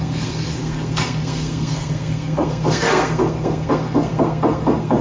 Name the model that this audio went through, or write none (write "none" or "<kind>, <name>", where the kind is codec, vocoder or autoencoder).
codec, SNAC